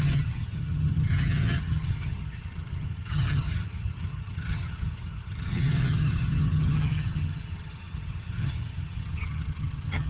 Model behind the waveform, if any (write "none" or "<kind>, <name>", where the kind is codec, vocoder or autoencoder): vocoder, HiFi-GAN